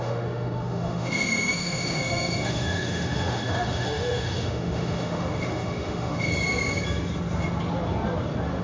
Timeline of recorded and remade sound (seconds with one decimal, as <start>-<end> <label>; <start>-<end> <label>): 0.0-6.3 remade; 6.3-8.6 recorded